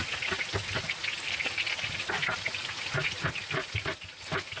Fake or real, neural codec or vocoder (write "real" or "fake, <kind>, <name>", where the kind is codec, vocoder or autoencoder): real